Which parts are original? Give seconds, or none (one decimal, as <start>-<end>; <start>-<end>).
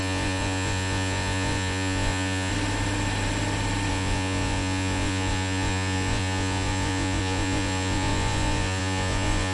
2.5-3.9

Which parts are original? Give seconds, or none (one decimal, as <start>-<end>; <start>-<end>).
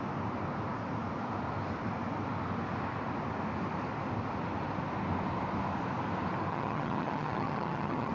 0.0-6.5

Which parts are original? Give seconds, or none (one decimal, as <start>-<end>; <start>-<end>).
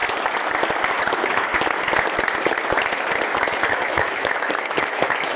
0.0-1.1; 1.5-3.7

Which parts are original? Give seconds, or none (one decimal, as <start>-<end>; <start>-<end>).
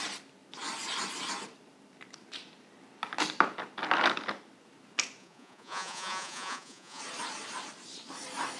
0.0-5.2; 7.0-8.6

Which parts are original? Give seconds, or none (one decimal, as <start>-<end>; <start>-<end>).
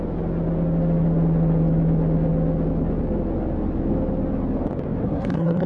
0.0-5.0